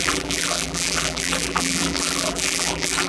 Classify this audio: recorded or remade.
remade